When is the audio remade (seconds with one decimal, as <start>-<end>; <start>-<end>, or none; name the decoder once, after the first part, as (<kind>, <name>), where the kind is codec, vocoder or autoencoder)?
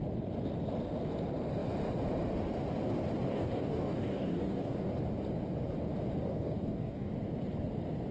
3.3-4.9 (codec, DAC); 6.3-7.1